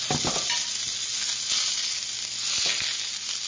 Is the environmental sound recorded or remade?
recorded